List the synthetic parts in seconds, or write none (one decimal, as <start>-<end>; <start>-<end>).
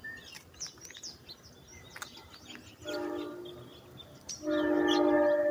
none